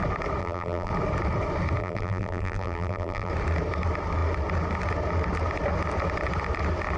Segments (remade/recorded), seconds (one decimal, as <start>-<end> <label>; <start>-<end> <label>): 0.0-0.4 recorded; 0.4-0.9 remade; 0.9-1.8 recorded; 1.8-3.3 remade; 3.3-7.0 recorded